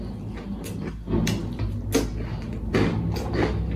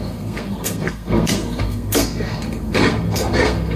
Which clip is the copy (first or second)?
second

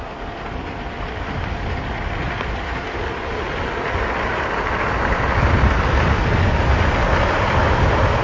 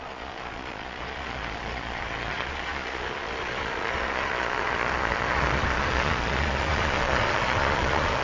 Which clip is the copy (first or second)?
second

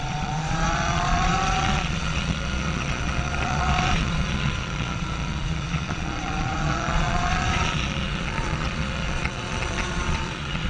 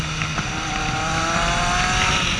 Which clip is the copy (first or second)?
first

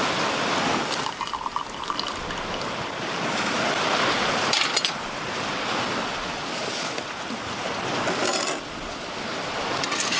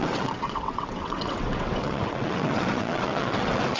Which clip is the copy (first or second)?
second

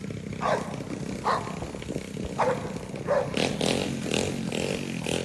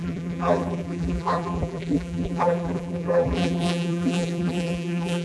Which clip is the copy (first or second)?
second